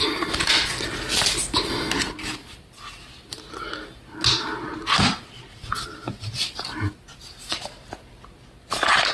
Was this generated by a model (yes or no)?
no